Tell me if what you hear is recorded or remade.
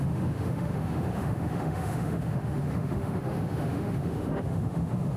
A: remade